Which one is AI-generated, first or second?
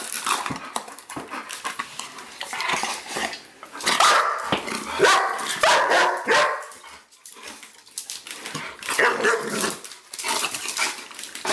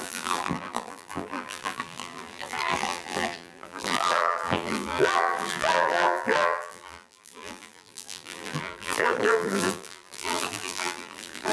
second